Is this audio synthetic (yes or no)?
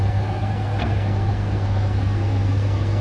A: yes